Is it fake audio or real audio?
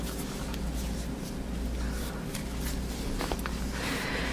real